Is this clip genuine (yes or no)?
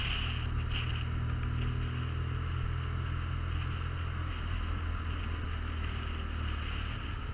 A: yes